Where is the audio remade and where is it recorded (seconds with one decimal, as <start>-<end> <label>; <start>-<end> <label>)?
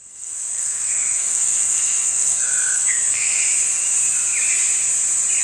0.0-3.4 remade; 3.4-5.4 recorded